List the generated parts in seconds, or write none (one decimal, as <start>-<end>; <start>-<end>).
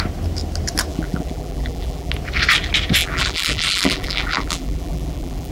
0.9-2.1; 3.0-5.5